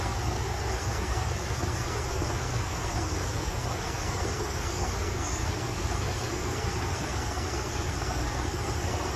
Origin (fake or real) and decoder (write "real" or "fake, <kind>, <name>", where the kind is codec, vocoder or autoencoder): fake, codec, SNAC